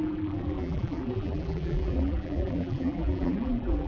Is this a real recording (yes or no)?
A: no